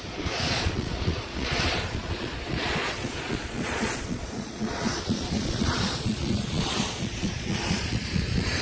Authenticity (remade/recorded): remade